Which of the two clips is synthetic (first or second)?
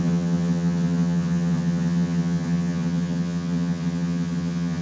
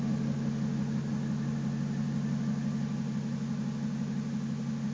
first